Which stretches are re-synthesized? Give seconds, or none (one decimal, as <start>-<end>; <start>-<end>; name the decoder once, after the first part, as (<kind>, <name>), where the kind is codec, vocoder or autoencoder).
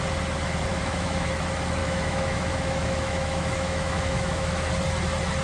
0.7-1.3 (autoencoder, DAC-VAE); 1.8-4.7